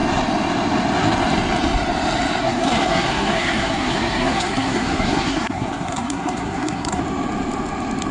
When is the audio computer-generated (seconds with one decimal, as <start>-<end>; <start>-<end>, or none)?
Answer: 2.4-7.0